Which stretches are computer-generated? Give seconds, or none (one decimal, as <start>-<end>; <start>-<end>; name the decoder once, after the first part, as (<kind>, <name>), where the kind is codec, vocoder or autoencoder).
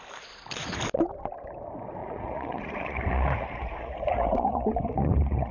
2.0-5.5 (vocoder, Vocos)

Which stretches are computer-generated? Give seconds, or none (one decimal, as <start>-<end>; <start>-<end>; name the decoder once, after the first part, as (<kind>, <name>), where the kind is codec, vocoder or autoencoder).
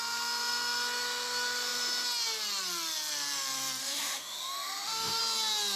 3.8-5.2 (autoencoder, DAC-VAE)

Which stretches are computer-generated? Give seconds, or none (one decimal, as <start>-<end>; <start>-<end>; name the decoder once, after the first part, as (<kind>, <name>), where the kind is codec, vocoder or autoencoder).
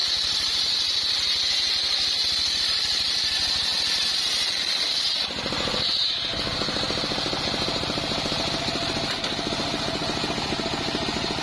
none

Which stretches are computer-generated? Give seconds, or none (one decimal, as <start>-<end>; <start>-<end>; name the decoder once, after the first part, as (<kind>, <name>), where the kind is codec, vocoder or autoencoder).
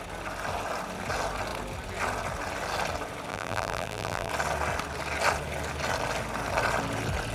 3.3-4.3 (vocoder, BigVGAN v2)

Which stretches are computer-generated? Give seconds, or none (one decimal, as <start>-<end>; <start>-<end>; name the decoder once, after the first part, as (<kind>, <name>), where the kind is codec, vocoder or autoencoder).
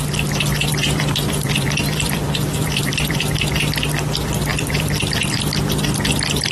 0.7-3.5 (vocoder, BigVGAN v2); 4.5-5.4